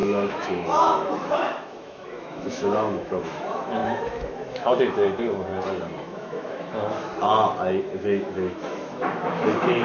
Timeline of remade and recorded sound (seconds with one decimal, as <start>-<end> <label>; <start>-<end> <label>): 0.0-5.5 remade; 5.5-6.0 recorded; 6.0-7.1 remade; 7.1-7.8 recorded; 7.8-9.8 remade